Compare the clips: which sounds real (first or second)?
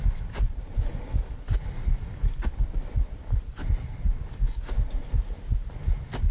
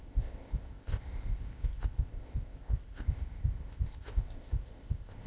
first